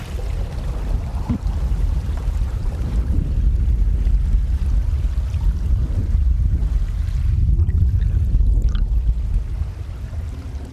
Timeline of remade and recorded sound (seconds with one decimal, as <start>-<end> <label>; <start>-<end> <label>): 0.0-1.1 recorded; 1.1-3.2 remade; 3.2-10.7 recorded